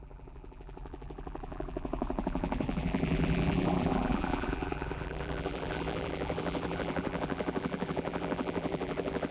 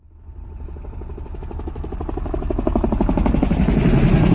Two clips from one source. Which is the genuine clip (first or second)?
second